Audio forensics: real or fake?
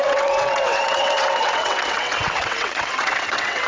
fake